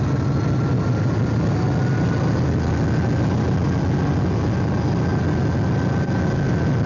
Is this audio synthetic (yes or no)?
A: no